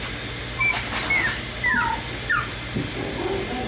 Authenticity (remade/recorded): recorded